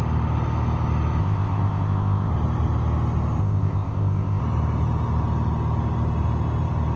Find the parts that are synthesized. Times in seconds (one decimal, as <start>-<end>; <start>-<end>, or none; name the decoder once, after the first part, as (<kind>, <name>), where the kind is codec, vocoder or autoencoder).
1.2-2.3 (codec, ZipCodec); 3.4-4.4